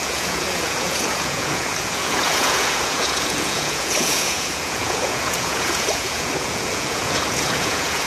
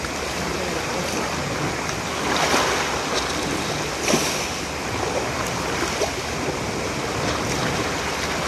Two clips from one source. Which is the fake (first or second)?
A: first